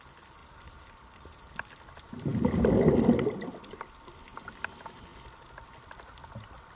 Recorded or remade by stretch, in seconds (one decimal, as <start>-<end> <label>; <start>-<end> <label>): 0.0-0.4 recorded; 0.4-1.7 remade; 1.7-6.8 recorded